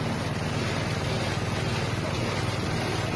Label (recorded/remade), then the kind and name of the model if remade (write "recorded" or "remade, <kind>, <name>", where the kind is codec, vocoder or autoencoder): recorded